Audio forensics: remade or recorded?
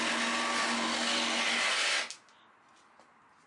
recorded